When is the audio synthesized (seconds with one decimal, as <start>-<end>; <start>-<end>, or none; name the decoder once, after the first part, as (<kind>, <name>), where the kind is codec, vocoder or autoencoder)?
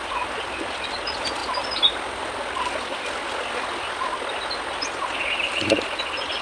none